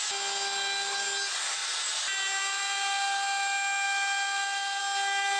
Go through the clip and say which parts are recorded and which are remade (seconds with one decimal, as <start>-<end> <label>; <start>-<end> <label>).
0.0-5.4 recorded